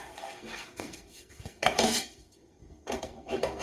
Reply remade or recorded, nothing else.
remade